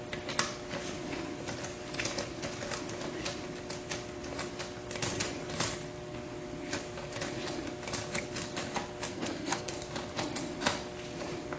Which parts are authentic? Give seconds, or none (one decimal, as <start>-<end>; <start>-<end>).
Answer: 0.0-9.1; 9.7-11.6